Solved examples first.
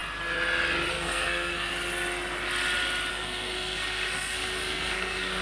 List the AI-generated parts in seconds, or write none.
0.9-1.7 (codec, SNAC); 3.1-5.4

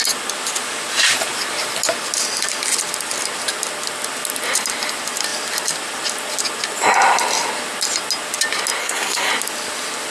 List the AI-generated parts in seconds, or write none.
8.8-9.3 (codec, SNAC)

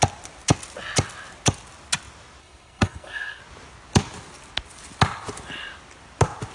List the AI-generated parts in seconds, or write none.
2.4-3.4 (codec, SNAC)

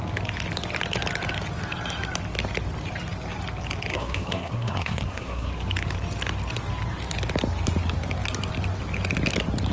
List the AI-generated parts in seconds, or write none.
3.9-5.5 (codec, SNAC)

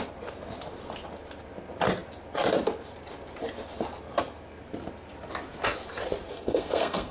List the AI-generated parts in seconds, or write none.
6.3-7.1 (codec, SNAC)